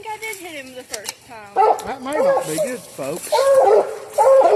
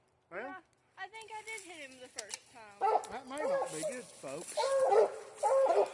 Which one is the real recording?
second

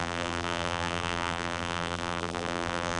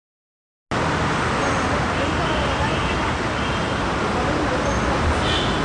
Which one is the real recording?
second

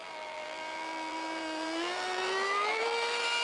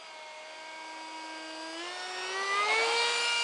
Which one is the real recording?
second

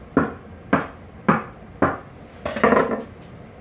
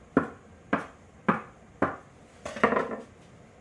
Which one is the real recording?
first